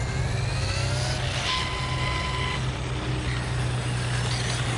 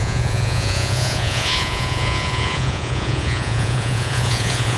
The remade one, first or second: second